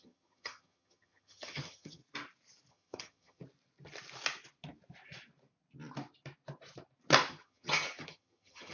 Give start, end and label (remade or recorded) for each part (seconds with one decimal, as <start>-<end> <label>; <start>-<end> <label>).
0.0-2.0 remade; 2.0-2.7 recorded; 2.7-3.4 remade; 3.4-7.3 recorded; 7.3-8.7 remade